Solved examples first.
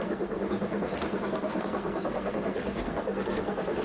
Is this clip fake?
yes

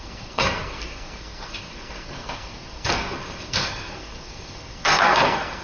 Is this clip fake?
yes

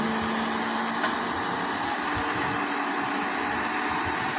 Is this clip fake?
no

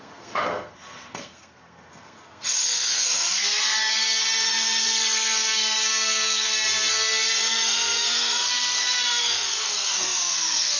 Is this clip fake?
yes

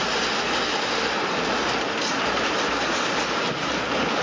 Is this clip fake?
no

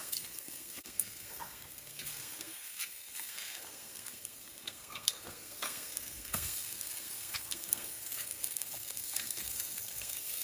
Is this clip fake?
yes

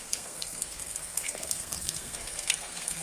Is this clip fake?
yes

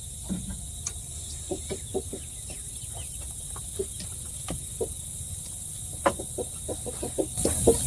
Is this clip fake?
no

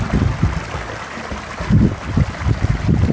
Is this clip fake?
no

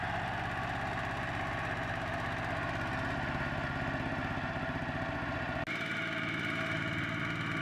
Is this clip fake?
no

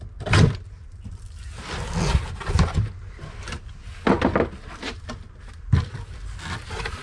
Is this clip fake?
no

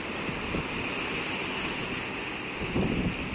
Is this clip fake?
no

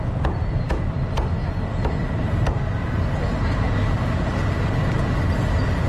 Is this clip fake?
no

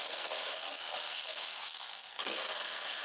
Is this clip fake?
yes